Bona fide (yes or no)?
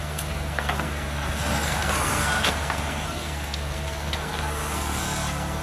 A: no